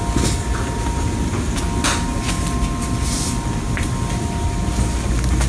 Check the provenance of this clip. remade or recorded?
recorded